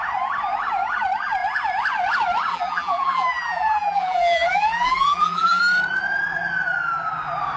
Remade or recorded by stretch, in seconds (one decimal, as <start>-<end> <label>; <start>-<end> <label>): 0.0-2.5 recorded; 2.5-5.6 remade; 5.6-7.6 recorded